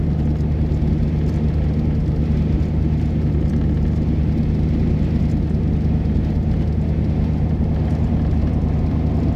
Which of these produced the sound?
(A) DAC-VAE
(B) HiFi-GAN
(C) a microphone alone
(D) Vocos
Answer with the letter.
C